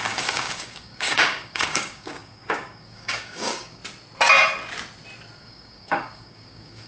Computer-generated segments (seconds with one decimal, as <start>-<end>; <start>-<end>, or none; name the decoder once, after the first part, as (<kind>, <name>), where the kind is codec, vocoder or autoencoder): 0.0-3.8 (codec, DAC); 5.4-6.9